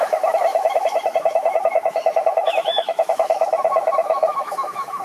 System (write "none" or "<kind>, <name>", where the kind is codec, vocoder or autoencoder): autoencoder, DAC-VAE